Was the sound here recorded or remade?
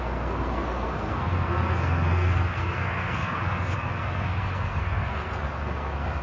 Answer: remade